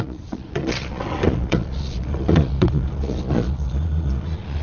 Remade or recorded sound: remade